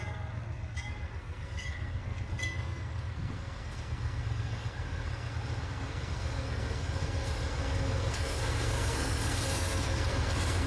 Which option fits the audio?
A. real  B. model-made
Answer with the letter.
B